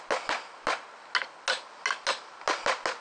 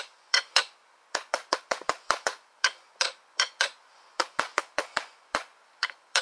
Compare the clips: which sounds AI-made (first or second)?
second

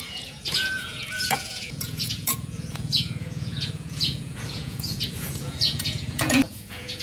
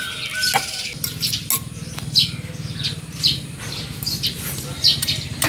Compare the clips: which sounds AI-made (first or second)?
first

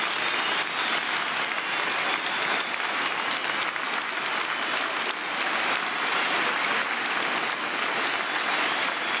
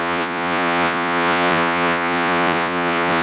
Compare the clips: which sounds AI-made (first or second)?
second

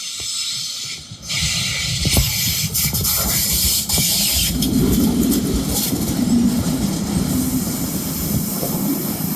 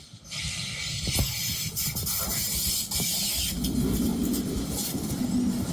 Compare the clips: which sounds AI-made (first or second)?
first